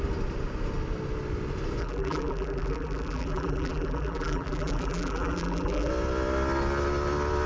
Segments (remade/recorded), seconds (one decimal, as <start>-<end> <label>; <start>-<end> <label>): 0.0-1.8 recorded; 1.8-5.9 remade; 5.9-7.5 recorded